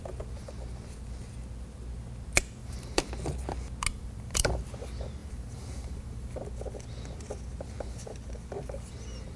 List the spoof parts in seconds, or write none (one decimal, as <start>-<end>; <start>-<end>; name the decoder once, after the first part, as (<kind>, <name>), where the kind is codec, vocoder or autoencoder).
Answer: 2.6-3.1 (vocoder, BigVGAN v2); 3.9-4.6; 5.2-6.3